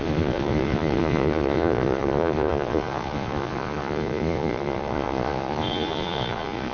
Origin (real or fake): fake